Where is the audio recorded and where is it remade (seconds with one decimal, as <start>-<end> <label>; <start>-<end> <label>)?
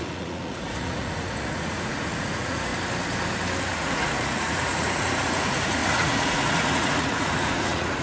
0.0-2.7 remade; 2.7-3.6 recorded; 3.6-8.0 remade